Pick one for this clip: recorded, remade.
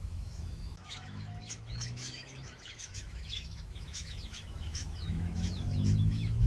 remade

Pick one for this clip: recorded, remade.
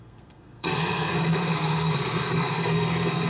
remade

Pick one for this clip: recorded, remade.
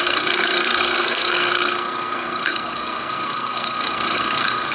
remade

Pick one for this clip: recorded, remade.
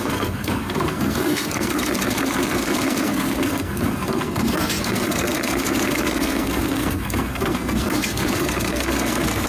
remade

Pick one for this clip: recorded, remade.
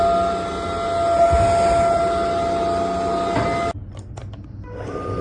recorded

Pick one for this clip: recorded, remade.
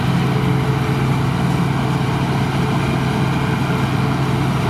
recorded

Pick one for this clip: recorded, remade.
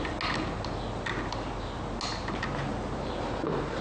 recorded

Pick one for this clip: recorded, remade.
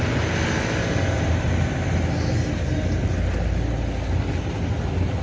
recorded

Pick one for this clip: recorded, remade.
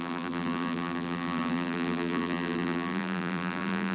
remade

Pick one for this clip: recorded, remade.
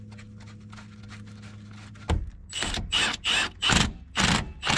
recorded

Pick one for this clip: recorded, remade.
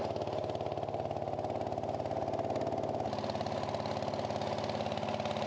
recorded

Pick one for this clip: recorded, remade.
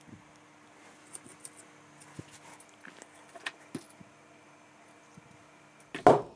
recorded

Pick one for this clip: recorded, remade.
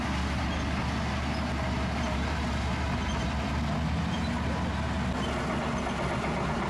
recorded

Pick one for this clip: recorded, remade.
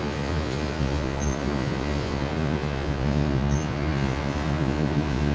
remade